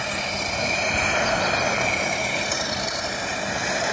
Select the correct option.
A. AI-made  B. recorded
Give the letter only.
A